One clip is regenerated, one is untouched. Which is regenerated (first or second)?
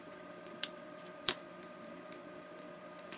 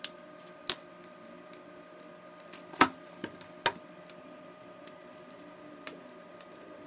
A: first